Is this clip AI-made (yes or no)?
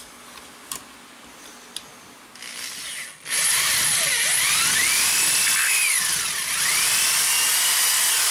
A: no